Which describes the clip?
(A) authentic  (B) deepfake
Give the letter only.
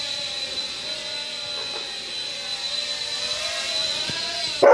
A